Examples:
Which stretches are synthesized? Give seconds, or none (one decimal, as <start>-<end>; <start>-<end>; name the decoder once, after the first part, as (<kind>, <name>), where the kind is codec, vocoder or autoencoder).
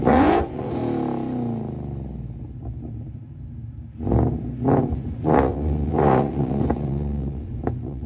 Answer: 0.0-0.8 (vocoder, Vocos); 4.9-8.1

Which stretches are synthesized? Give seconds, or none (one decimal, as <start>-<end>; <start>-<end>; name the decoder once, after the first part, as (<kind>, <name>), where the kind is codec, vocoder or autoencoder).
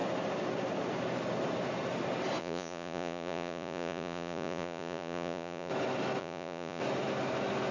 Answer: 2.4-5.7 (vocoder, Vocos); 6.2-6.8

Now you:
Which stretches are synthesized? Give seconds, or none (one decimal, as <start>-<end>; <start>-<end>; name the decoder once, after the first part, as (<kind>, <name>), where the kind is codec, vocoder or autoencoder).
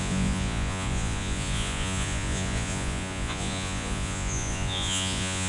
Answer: 0.0-5.5 (vocoder, Vocos)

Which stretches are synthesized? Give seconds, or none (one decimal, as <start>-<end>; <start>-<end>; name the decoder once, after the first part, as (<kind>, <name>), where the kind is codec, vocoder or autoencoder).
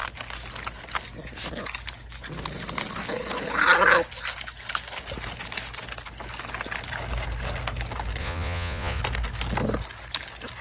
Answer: 8.2-9.0 (vocoder, Vocos)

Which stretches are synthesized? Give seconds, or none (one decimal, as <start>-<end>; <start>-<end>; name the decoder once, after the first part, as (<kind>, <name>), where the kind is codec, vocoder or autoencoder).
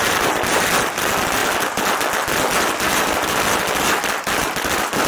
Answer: none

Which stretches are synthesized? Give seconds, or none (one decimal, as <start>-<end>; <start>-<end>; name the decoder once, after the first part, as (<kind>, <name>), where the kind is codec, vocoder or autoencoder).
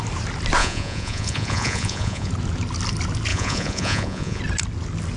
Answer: 0.6-2.3 (vocoder, Vocos); 3.3-4.4